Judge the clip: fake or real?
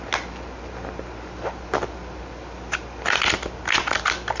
real